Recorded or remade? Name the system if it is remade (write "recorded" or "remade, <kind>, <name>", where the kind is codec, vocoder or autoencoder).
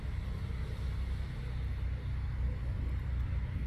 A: recorded